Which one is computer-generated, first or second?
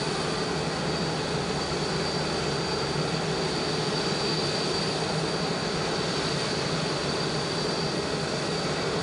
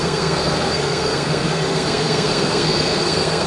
second